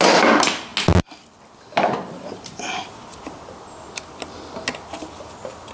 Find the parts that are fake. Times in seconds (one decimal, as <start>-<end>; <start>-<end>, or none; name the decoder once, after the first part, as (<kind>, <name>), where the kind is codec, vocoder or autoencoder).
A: none